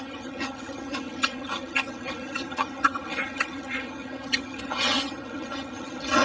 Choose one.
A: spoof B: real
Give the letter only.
A